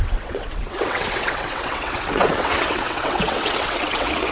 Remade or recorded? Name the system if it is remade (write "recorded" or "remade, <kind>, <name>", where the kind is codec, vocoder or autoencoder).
remade, vocoder, WaveNeXt